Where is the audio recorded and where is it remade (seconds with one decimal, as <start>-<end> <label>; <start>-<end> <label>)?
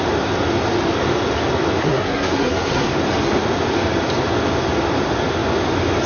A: 0.0-1.8 recorded; 1.8-2.9 remade; 2.9-6.1 recorded